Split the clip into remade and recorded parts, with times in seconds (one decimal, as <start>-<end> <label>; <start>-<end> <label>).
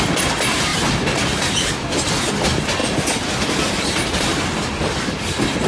0.0-5.7 recorded